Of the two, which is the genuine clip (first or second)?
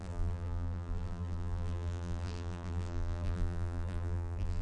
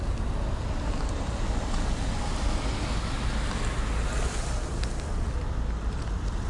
second